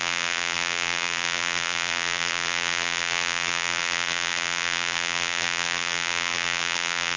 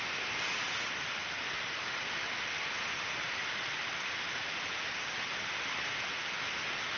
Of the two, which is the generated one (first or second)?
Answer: first